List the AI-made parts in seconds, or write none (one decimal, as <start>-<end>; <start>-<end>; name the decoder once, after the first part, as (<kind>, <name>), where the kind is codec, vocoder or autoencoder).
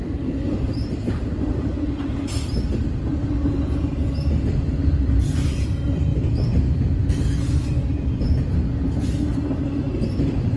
0.0-1.7 (vocoder, BigVGAN v2); 5.6-6.1; 9.5-10.6